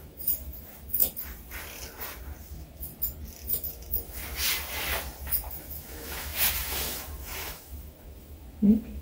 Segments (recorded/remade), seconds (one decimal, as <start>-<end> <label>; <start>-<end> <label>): 0.0-1.0 remade; 1.0-2.4 recorded; 2.4-2.9 remade; 2.9-3.5 recorded; 3.5-4.2 remade; 4.2-5.5 recorded; 5.5-9.0 remade